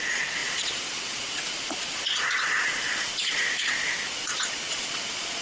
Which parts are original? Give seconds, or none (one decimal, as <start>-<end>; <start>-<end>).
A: none